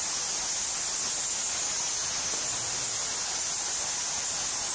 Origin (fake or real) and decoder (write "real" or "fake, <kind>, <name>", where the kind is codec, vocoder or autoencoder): real